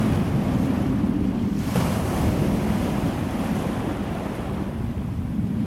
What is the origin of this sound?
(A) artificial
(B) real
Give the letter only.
A